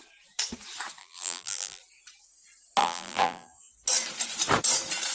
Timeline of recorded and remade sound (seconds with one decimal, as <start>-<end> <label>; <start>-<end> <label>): 0.0-1.0 recorded; 1.0-1.8 remade; 1.8-2.8 recorded; 2.8-3.7 remade; 3.7-5.1 recorded